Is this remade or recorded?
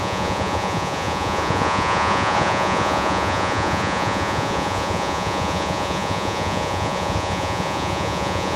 remade